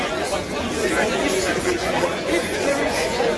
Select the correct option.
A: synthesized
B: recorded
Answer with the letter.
A